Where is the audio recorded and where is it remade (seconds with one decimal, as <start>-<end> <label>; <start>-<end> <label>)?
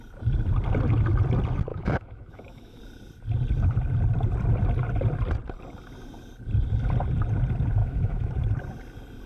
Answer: 0.0-1.7 recorded; 1.7-2.8 remade; 2.8-7.8 recorded; 7.8-8.3 remade; 8.3-9.3 recorded